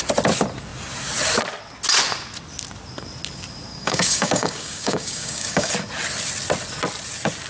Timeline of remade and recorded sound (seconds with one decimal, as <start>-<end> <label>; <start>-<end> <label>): 0.0-3.7 recorded; 3.7-5.7 remade; 5.7-7.5 recorded